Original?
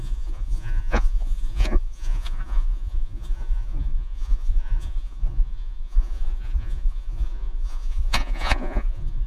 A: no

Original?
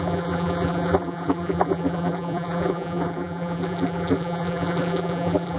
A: no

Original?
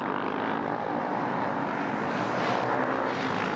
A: yes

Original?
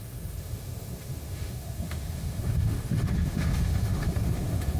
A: no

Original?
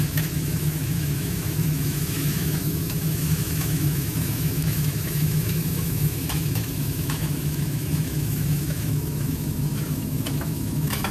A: no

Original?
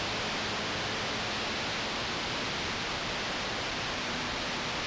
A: yes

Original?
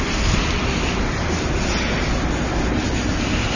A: yes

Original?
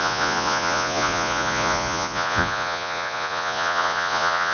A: no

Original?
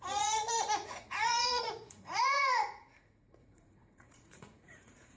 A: no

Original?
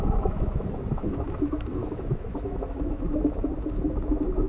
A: no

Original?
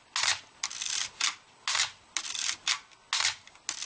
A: yes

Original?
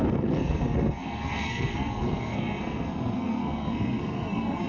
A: no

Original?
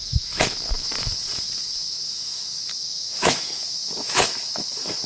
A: no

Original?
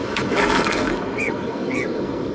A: no